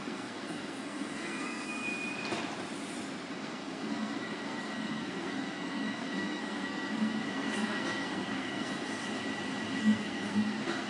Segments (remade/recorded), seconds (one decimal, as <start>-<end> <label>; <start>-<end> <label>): 0.0-1.9 remade; 1.9-3.3 recorded; 3.3-9.0 remade; 9.0-9.8 recorded; 9.8-10.9 remade